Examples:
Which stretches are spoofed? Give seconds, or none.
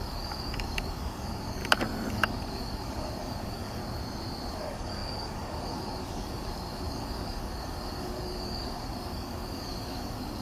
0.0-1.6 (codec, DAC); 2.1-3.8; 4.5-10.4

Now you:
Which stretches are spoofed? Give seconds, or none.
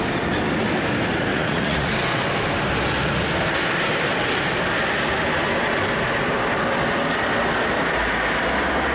1.3-1.9 (vocoder, Vocos)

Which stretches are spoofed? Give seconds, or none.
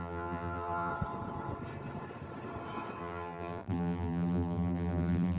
0.0-0.9 (vocoder, BigVGAN v2); 3.0-5.4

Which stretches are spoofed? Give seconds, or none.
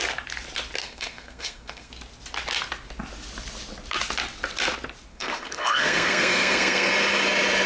0.8-1.9 (codec, SNAC); 5.1-6.9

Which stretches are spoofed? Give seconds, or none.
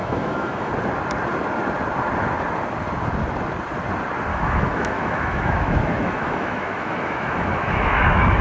0.0-0.7 (autoencoder, DAC-VAE); 4.3-8.4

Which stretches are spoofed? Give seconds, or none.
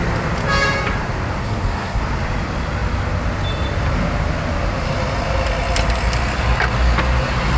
1.4-2.0 (codec, SNAC)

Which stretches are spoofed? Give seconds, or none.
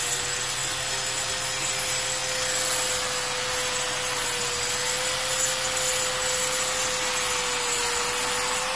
none